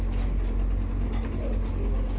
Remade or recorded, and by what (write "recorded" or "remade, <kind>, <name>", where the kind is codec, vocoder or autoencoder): recorded